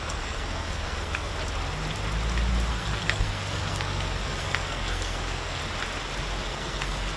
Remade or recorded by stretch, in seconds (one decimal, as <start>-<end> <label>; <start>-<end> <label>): 0.0-1.3 remade; 1.3-2.7 recorded; 2.7-5.6 remade; 5.6-6.4 recorded; 6.4-7.2 remade

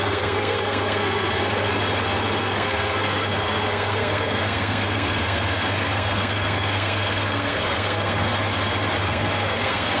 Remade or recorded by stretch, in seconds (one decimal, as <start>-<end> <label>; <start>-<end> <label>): 0.0-1.7 remade; 1.7-2.4 recorded; 2.4-8.3 remade; 8.3-9.0 recorded; 9.0-10.0 remade